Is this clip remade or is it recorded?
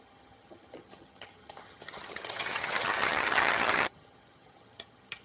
remade